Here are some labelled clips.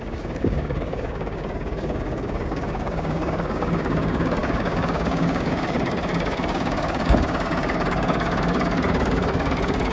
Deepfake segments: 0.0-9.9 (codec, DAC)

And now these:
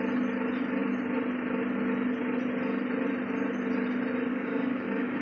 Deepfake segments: 4.3-5.2 (codec, DAC)

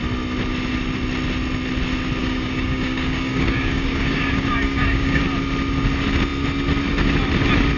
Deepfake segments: 2.2-5.2 (codec, DAC)

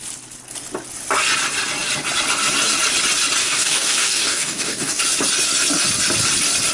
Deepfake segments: 3.4-5.0 (codec, DAC)

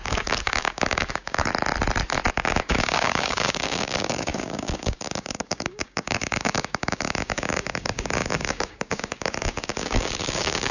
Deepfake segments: 0.0-1.5 (codec, DAC); 2.3-10.7

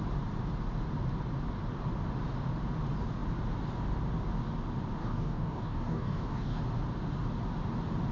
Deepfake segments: 5.0-6.6 (codec, DAC)

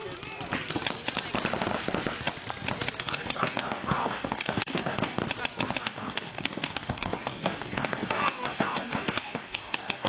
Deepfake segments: 3.0-5.2 (codec, DAC); 5.8-10.1

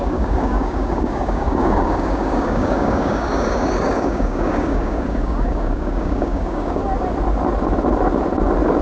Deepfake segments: 0.0-6.8 (codec, DAC)